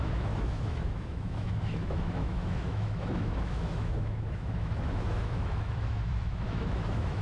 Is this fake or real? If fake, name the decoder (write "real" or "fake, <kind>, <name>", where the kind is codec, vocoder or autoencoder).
fake, autoencoder, DAC-VAE